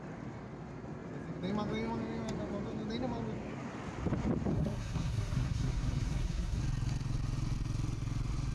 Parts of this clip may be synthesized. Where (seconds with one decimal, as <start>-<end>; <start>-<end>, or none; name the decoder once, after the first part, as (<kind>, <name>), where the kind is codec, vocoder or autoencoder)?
4.5-6.6 (codec, SNAC)